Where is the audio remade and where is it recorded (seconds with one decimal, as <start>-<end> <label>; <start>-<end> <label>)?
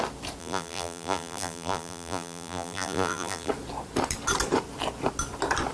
0.0-0.4 recorded; 0.4-3.5 remade; 3.5-5.7 recorded